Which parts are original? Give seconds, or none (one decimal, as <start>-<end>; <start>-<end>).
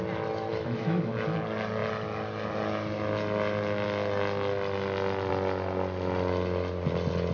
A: 0.0-0.5; 1.1-7.3